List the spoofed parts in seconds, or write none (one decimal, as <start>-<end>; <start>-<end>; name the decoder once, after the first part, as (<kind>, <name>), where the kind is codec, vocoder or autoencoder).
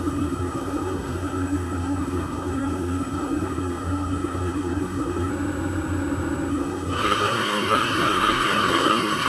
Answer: 0.0-5.3 (codec, SNAC); 6.5-9.3